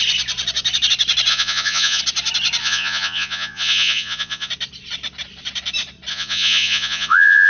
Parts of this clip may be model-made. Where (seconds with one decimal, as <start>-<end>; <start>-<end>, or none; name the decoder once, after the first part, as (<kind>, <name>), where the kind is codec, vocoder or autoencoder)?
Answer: 1.3-2.0 (vocoder, Vocos); 2.6-4.5; 6.1-7.5